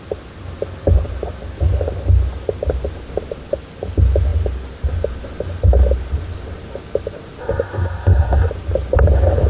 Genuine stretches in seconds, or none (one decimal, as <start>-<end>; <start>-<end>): 0.0-7.4; 8.5-9.5